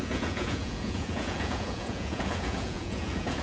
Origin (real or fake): fake